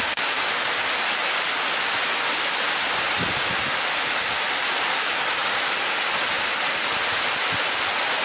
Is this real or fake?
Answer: real